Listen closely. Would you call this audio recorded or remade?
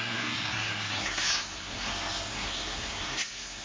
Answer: remade